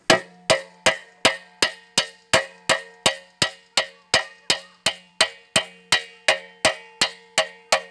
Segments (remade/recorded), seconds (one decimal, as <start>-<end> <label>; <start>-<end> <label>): 0.0-7.9 recorded